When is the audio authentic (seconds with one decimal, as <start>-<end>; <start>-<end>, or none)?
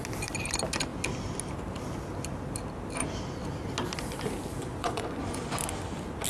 0.0-4.6; 5.5-6.3